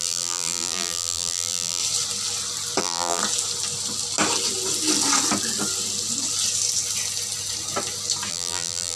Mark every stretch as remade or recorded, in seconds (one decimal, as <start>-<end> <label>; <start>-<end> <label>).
0.0-1.8 remade; 1.8-2.8 recorded; 2.8-3.2 remade; 3.2-8.3 recorded; 8.3-9.0 remade